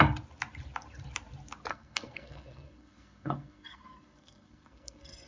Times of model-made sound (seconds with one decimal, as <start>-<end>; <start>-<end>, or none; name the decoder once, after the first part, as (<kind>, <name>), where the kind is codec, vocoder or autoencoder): 1.7-5.3 (codec, SNAC)